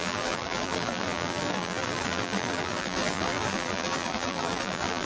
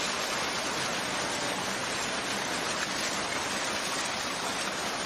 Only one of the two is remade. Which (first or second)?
first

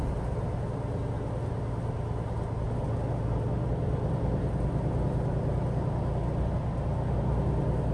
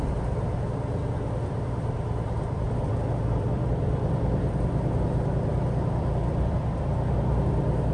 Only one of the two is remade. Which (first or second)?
second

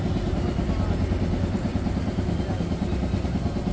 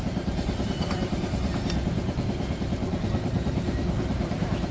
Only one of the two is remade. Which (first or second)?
second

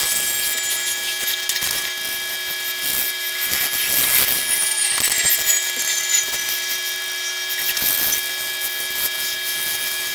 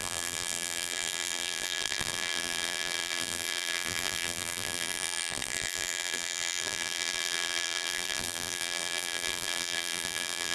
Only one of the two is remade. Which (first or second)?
second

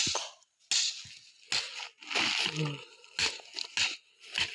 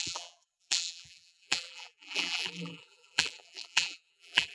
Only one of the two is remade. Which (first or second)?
second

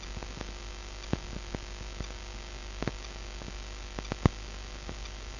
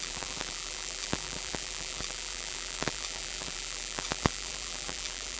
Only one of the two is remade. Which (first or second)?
second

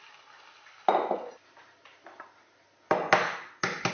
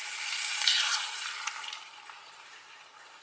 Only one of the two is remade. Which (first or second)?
second